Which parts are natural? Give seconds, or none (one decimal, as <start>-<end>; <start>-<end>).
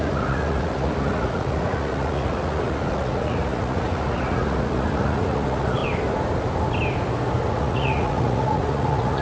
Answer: 5.8-7.5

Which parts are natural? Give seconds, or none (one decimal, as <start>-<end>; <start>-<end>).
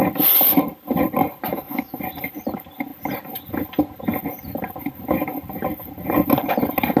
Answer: 0.0-1.5; 2.0-7.0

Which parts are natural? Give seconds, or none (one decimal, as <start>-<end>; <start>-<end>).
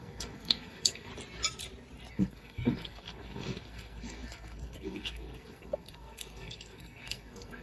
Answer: 1.1-2.1